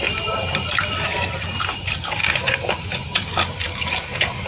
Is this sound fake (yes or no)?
no